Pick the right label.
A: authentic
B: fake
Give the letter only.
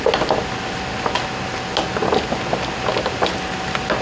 A